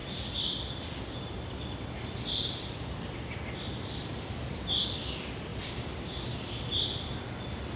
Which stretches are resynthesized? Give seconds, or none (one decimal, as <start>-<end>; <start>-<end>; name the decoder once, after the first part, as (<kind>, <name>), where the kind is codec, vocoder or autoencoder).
0.0-3.4 (vocoder, BigVGAN v2); 4.0-4.8; 5.5-7.2